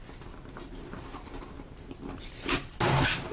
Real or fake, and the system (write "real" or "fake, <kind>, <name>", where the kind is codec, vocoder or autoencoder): real